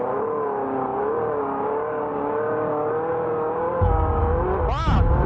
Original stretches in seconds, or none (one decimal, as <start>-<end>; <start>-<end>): 4.2-5.3